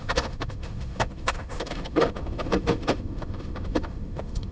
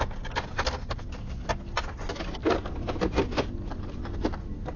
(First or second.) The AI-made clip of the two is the first